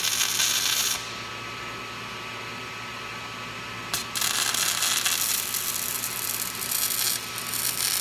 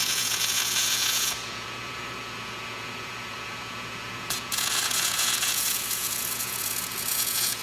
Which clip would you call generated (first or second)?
second